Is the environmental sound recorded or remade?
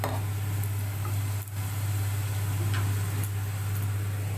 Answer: recorded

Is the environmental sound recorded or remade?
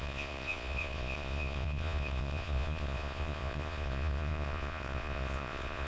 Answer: remade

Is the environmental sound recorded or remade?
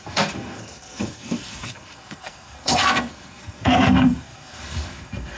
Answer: remade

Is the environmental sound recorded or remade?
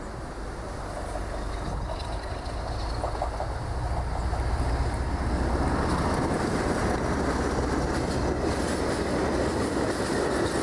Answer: recorded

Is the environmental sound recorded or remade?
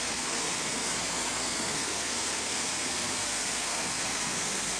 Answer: remade